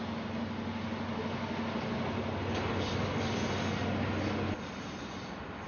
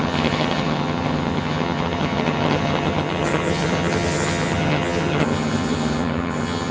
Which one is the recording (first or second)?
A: first